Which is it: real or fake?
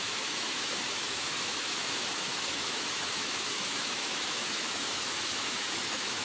fake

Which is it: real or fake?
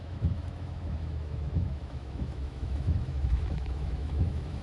fake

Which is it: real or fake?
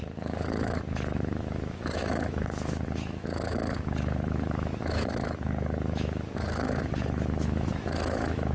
fake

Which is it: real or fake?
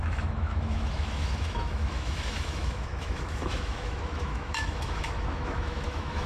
fake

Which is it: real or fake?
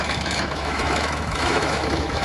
fake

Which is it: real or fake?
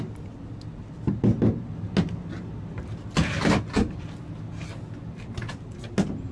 real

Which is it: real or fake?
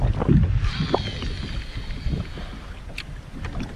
real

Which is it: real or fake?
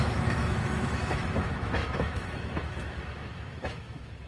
fake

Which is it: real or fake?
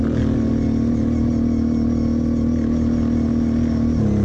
real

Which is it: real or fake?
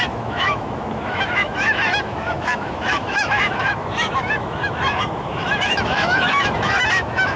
fake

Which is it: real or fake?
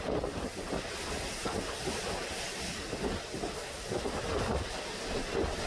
real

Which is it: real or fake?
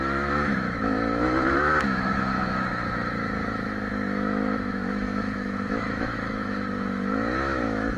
fake